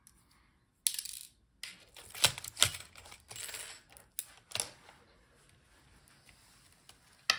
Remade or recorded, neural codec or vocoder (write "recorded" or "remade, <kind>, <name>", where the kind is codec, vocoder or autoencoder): recorded